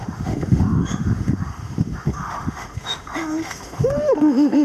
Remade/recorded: remade